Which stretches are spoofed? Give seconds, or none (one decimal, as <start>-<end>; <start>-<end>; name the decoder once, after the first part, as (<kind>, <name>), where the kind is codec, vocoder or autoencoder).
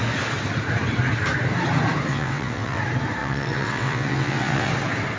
2.1-2.8 (vocoder, WaveNeXt); 3.2-4.7